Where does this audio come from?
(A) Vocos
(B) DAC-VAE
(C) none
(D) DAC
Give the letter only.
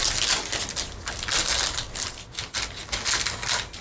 C